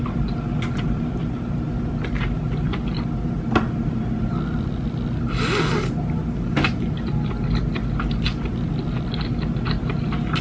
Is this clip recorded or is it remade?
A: recorded